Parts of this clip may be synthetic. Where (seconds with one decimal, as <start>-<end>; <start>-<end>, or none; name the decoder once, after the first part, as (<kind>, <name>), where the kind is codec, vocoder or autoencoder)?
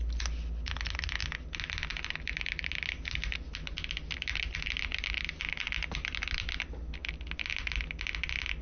none